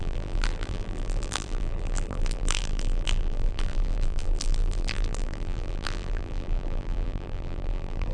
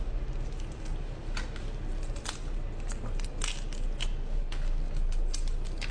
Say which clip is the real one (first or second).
second